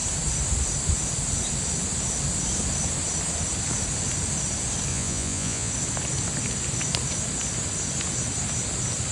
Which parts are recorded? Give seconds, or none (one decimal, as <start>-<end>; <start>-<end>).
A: 0.0-4.9; 5.7-9.1